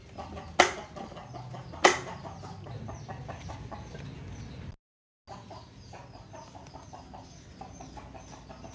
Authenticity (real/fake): real